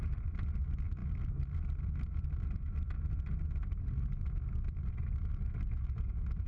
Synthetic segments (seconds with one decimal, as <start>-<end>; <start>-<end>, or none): none